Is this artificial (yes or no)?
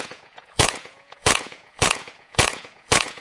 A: yes